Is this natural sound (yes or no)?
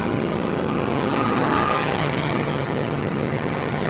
no